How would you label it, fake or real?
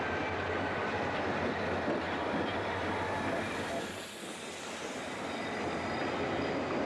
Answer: real